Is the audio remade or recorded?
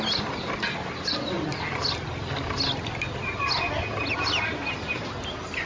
recorded